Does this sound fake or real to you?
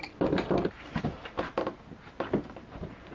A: fake